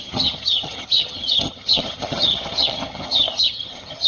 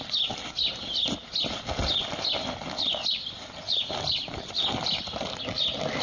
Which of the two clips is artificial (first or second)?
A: first